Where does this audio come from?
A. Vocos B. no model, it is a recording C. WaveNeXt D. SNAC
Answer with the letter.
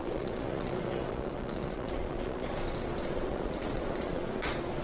A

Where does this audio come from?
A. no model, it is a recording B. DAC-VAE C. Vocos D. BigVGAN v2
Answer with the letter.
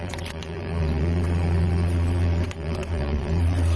C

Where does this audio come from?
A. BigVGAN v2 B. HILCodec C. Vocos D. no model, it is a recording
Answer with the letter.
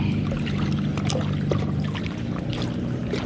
D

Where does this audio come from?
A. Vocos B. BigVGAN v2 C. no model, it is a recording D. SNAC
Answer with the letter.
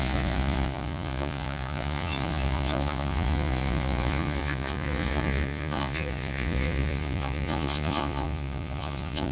A